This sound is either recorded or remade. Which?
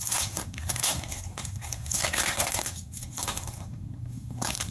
remade